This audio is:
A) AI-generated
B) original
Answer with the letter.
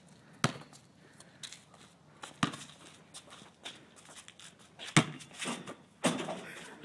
B